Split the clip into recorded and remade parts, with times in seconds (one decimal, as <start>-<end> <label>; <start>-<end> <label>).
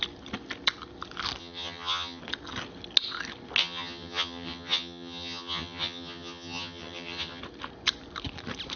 0.0-1.4 recorded; 1.4-2.2 remade; 2.2-3.6 recorded; 3.6-7.4 remade; 7.4-8.8 recorded